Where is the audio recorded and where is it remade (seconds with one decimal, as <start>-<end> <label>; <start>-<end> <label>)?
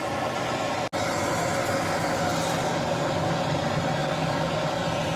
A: 0.0-1.6 recorded; 1.6-2.2 remade; 2.2-2.6 recorded; 2.6-3.4 remade; 3.4-4.0 recorded; 4.0-4.8 remade; 4.8-5.2 recorded